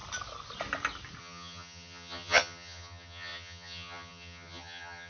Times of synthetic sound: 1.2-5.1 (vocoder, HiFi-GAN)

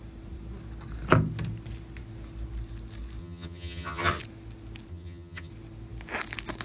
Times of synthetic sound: 3.2-4.2 (vocoder, HiFi-GAN); 4.9-5.5

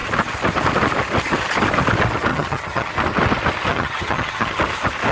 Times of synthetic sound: 2.3-2.9 (vocoder, HiFi-GAN); 3.7-4.6

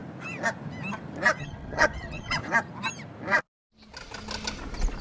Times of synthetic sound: 1.4-2.4 (vocoder, HiFi-GAN)

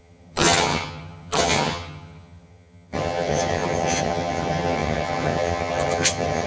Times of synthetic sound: 0.0-6.5 (vocoder, HiFi-GAN)

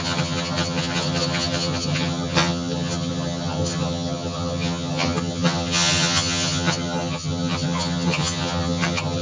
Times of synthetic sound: 0.0-9.2 (vocoder, HiFi-GAN)

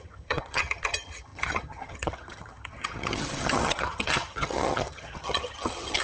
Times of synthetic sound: 0.0-6.0 (vocoder, HiFi-GAN)

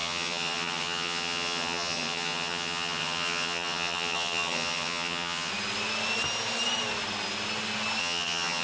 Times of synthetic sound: 0.0-5.5 (vocoder, HiFi-GAN); 8.0-8.6